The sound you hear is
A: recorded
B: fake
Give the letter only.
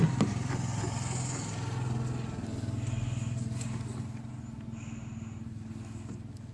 A